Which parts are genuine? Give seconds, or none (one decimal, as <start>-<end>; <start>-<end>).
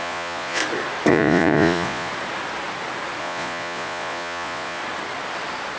0.6-1.1; 2.1-3.2; 4.8-5.8